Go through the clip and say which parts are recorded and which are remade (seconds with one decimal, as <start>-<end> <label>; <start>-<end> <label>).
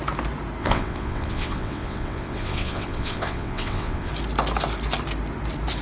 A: 0.0-0.6 recorded; 0.6-4.1 remade; 4.1-5.8 recorded